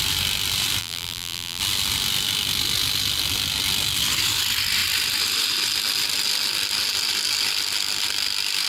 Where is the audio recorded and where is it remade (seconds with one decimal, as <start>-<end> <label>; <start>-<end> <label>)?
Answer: 0.0-0.8 recorded; 0.8-1.6 remade; 1.6-8.7 recorded